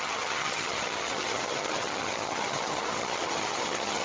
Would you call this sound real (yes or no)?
no